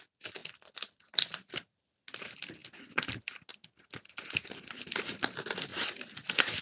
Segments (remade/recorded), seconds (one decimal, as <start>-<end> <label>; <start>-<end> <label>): 0.0-0.4 recorded; 0.4-1.5 remade; 1.5-2.6 recorded; 2.6-3.5 remade; 3.5-6.6 recorded